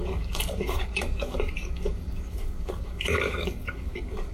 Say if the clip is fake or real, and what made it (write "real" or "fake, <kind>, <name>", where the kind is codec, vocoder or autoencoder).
fake, codec, DAC